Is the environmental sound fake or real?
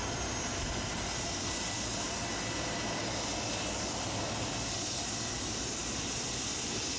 real